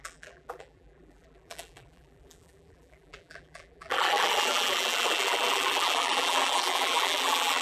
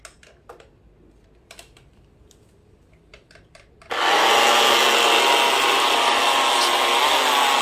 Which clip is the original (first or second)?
second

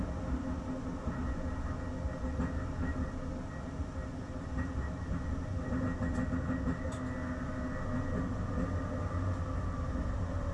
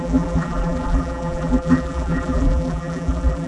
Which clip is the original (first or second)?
first